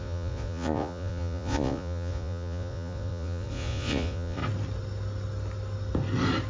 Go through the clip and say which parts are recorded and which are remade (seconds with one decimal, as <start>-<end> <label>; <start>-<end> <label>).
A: 0.0-4.4 remade; 4.4-6.5 recorded